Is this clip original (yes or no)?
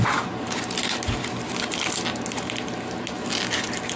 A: yes